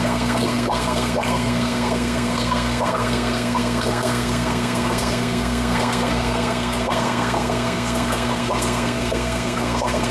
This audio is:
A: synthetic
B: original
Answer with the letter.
A